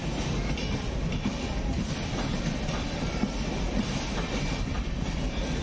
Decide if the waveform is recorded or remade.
recorded